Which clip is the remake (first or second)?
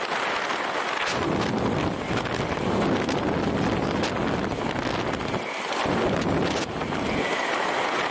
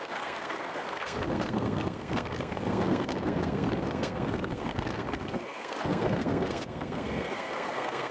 second